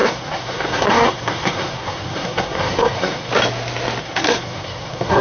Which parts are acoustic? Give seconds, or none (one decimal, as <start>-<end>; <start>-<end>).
3.3-4.0